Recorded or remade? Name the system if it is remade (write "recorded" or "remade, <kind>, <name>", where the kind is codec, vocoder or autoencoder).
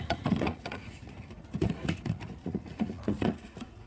remade, vocoder, Vocos